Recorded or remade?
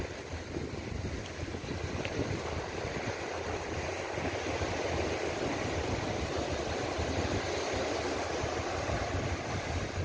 recorded